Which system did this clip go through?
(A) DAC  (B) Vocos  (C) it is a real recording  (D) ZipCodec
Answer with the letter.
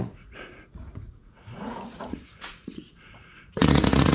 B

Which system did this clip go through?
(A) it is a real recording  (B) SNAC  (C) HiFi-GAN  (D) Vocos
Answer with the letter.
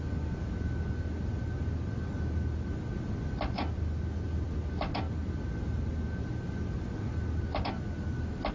A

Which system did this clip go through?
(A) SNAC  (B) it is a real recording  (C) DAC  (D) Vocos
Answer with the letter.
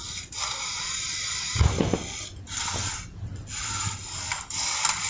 B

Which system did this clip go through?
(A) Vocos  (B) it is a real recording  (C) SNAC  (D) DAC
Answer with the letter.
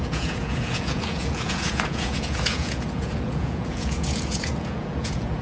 A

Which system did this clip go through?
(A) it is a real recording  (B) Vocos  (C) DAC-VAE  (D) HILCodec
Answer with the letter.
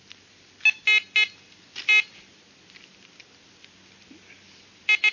A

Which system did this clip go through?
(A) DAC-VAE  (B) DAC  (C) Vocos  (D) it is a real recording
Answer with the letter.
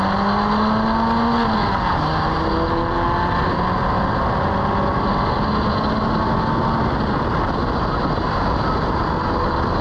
D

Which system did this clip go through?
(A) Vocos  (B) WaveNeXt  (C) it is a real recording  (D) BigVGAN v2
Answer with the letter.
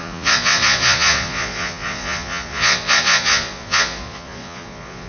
A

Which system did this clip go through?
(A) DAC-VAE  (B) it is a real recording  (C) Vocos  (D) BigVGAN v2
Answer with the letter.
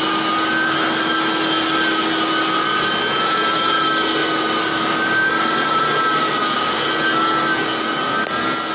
B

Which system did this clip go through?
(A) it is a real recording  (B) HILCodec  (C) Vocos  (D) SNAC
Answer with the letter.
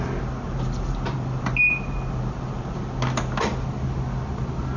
A